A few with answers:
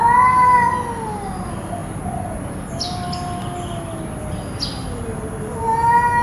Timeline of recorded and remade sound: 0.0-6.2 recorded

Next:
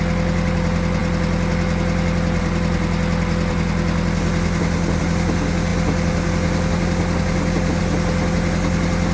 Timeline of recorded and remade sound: 0.0-9.1 recorded

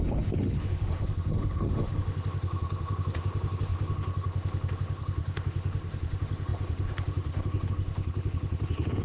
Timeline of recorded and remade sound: 0.0-9.0 remade